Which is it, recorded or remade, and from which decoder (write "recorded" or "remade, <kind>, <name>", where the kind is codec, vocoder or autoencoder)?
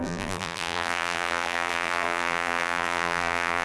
remade, vocoder, BigVGAN v2